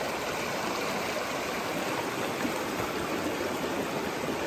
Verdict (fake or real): real